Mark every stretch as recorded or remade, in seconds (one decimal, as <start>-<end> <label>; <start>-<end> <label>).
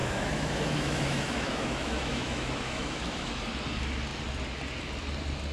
0.0-3.3 remade; 3.3-5.5 recorded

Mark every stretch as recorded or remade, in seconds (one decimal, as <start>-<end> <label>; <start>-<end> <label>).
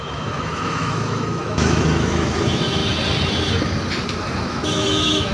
0.0-2.8 remade; 2.8-4.2 recorded; 4.2-5.3 remade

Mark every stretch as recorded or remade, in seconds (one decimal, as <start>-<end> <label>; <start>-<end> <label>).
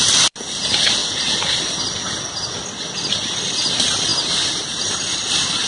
0.0-5.7 recorded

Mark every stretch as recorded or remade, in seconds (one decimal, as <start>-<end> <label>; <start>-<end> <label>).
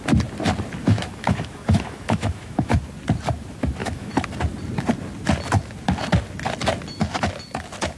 0.0-0.8 recorded; 0.8-2.7 remade; 2.7-3.8 recorded; 3.8-4.3 remade; 4.3-8.0 recorded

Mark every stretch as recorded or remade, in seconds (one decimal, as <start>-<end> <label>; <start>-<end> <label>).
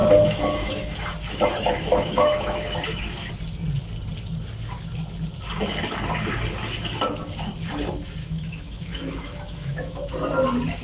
0.0-3.3 remade; 3.3-8.2 recorded; 8.2-10.1 remade; 10.1-10.8 recorded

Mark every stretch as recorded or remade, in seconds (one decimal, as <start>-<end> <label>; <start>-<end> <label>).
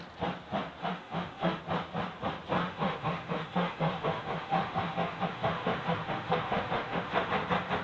0.0-0.8 recorded; 0.8-1.6 remade; 1.6-2.6 recorded; 2.6-7.3 remade; 7.3-7.8 recorded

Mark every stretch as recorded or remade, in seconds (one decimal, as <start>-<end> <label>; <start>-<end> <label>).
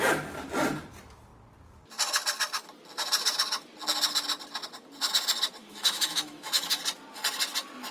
0.0-5.6 recorded; 5.6-6.8 remade; 6.8-7.9 recorded